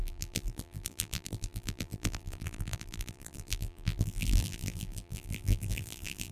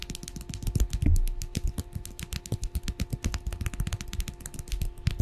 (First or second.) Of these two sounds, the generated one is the first